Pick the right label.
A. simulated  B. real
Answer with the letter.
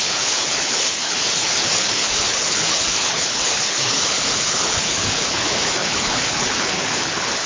A